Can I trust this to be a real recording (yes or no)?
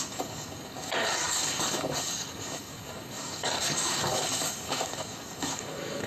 no